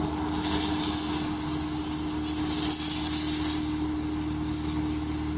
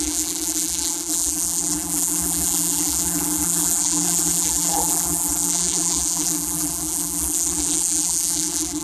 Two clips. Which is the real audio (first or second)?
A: first